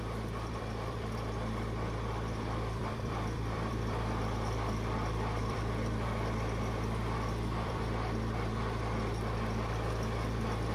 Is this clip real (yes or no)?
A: no